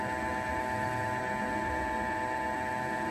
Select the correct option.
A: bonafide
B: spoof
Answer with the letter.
A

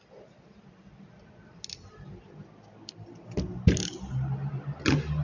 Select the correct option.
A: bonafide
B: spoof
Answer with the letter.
A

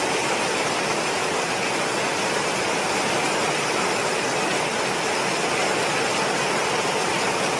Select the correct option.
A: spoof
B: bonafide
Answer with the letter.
B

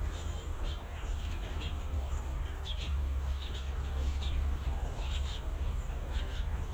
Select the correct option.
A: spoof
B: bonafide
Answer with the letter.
A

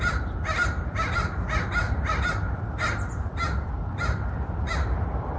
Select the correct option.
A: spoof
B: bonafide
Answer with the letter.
A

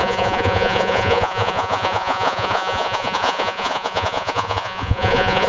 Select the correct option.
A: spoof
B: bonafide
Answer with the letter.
A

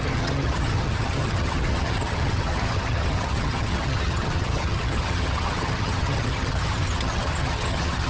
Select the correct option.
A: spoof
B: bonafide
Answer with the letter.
A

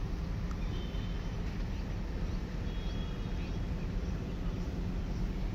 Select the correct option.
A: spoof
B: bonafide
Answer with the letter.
B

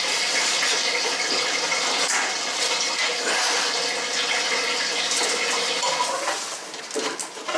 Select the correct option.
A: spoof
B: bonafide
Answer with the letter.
B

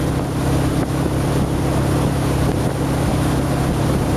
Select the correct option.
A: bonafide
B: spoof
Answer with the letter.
A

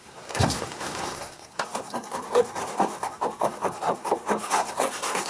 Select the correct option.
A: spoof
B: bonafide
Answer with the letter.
A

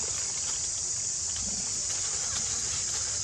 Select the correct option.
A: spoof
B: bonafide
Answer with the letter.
B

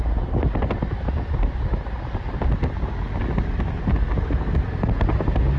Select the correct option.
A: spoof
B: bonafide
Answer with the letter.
B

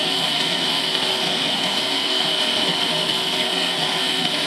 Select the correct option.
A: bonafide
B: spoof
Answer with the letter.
B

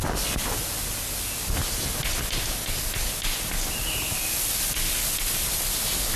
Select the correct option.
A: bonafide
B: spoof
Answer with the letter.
A